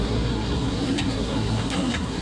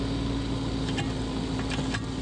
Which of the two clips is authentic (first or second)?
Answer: second